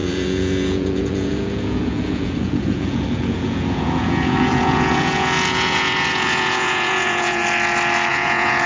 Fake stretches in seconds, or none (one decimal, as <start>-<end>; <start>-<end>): 0.0-7.4; 8.1-8.7

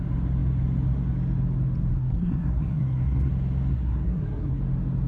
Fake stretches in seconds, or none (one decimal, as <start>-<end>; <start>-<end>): 1.9-3.3; 3.7-4.6

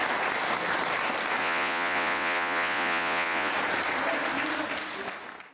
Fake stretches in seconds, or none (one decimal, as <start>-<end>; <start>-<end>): 1.4-3.5

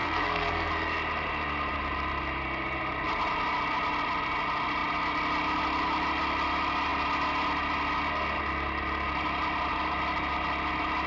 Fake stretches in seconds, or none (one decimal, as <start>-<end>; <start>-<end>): 0.0-0.7

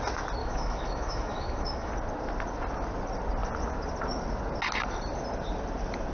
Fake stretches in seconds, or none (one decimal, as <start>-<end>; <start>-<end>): 0.4-1.9

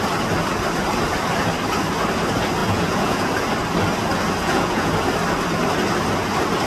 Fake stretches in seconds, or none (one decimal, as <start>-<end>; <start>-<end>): 2.6-3.3; 4.4-4.9

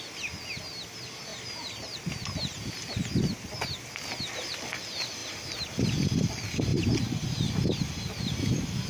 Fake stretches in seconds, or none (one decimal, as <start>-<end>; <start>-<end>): 1.3-2.0

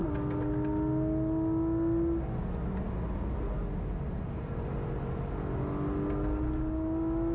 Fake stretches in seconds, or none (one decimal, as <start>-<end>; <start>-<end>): none